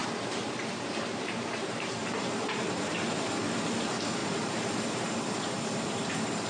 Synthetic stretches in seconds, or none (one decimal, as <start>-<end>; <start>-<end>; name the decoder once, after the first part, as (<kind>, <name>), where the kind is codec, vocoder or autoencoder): 0.0-6.5 (vocoder, BigVGAN v2)